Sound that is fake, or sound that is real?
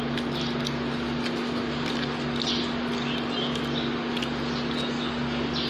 real